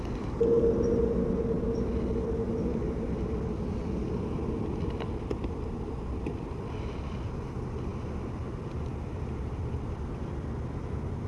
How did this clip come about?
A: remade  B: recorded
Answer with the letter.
B